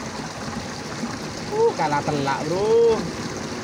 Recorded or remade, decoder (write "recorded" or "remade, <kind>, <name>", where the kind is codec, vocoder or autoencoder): recorded